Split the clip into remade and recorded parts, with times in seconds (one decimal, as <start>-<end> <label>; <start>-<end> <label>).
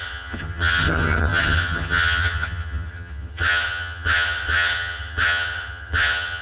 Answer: 0.0-6.4 remade